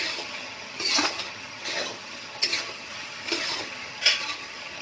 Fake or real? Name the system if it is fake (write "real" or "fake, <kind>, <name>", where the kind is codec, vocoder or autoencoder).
fake, vocoder, HiFi-GAN